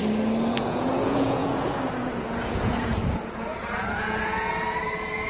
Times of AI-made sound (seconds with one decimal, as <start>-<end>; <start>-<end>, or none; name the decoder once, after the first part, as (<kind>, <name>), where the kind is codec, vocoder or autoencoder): 0.6-5.3 (vocoder, Vocos)